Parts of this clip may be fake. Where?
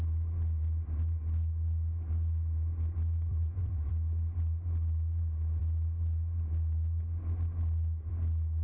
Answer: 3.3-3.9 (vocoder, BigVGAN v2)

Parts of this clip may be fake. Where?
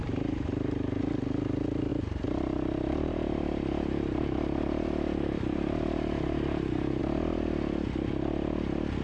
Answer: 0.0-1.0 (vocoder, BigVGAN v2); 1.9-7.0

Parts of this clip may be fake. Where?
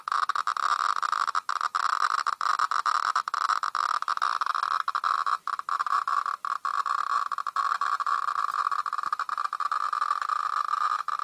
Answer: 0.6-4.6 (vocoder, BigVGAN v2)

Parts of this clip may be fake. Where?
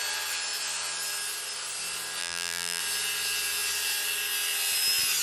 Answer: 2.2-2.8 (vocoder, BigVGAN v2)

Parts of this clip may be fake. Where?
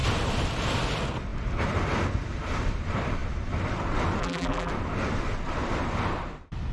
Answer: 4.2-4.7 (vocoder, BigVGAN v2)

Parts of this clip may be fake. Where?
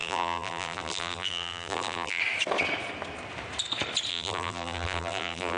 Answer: 0.0-2.2 (vocoder, BigVGAN v2); 4.1-5.6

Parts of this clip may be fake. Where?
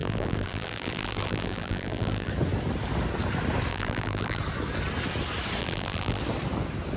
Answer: 0.0-2.3 (vocoder, BigVGAN v2); 3.7-4.4; 5.6-6.2